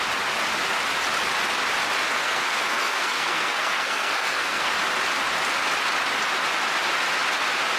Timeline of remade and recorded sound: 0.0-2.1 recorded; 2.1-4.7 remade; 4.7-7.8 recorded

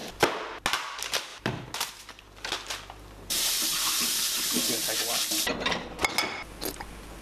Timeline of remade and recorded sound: 0.0-1.3 recorded; 1.3-5.0 remade; 5.0-7.2 recorded

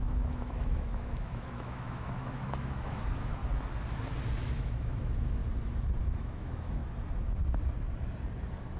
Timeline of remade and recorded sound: 0.0-3.4 remade; 3.4-4.4 recorded; 4.4-5.4 remade; 5.4-6.0 recorded; 6.0-6.8 remade; 6.8-8.8 recorded

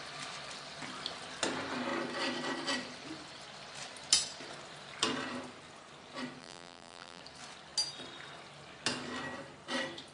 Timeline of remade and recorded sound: 0.0-6.4 recorded; 6.4-7.2 remade; 7.2-10.1 recorded

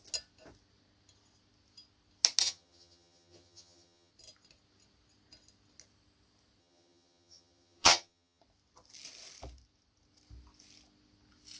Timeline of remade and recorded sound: 0.0-2.4 recorded; 2.4-4.1 remade; 4.1-6.6 recorded; 6.6-8.4 remade; 8.4-11.6 recorded

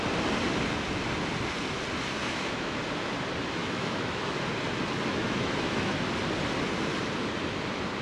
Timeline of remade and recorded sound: 0.0-2.2 recorded; 2.2-2.8 remade; 2.8-3.6 recorded; 3.6-4.3 remade; 4.3-5.1 recorded; 5.1-5.9 remade; 5.9-8.0 recorded